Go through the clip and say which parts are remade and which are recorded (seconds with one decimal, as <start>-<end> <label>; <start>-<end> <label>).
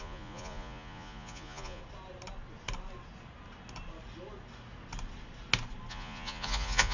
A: 0.0-1.8 remade; 1.8-5.9 recorded; 5.9-6.9 remade